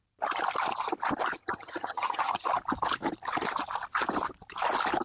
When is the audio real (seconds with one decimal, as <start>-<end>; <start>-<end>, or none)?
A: 0.0-1.4; 2.4-5.0

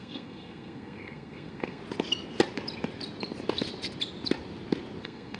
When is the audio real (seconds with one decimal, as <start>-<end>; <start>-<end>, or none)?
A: 1.8-5.0

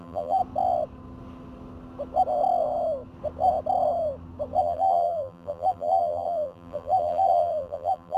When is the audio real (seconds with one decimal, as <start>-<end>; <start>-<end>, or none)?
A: 0.4-4.6

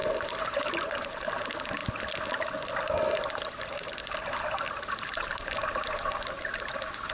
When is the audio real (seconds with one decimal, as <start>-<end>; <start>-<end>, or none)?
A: 1.8-3.5

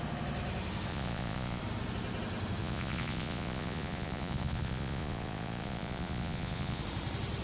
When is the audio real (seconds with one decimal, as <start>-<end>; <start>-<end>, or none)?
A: 0.0-0.9; 1.6-2.6; 6.8-7.4

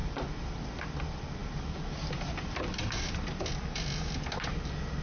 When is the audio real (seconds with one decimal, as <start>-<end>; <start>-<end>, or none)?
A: 1.0-1.4; 3.2-5.0

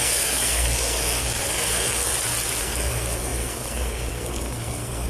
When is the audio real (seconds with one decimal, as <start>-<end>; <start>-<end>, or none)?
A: 2.1-2.6

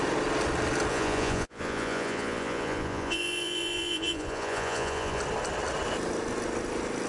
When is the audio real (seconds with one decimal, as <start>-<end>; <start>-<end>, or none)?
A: 0.0-0.9; 5.2-7.1